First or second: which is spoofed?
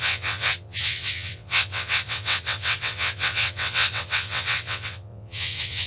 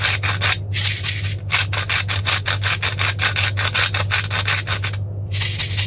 first